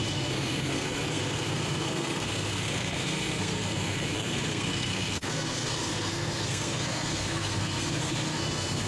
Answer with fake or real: fake